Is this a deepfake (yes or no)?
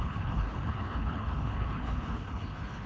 yes